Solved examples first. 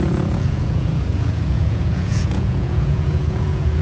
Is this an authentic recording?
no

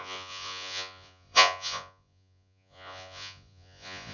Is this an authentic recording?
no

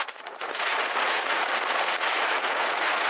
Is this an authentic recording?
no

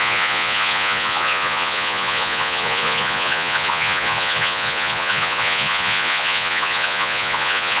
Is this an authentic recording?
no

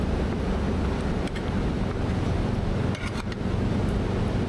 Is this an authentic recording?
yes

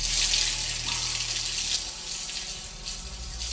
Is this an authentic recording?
yes